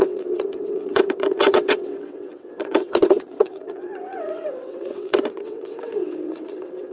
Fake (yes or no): yes